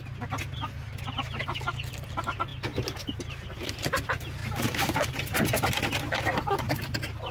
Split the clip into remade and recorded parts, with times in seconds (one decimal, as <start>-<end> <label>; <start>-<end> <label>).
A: 0.0-4.4 recorded; 4.4-5.1 remade; 5.1-7.3 recorded